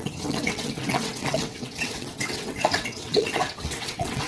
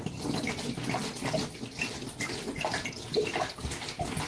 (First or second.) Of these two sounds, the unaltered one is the second